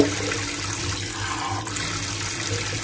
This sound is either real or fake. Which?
real